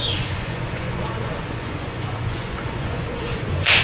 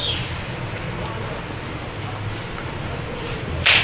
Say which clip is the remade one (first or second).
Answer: first